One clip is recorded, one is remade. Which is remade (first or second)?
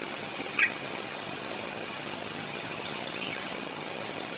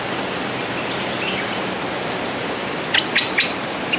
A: first